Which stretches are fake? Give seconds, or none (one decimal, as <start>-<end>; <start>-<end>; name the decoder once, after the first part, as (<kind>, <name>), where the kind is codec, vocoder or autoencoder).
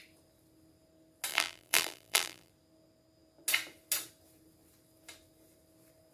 1.3-2.5 (vocoder, BigVGAN v2)